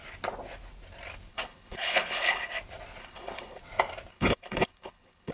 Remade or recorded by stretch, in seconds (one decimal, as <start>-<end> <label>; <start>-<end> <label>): 0.0-1.3 recorded; 1.3-2.6 remade; 2.6-3.0 recorded; 3.0-3.6 remade; 3.6-4.1 recorded; 4.1-5.3 remade